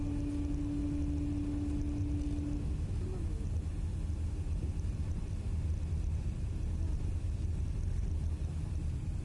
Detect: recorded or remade recorded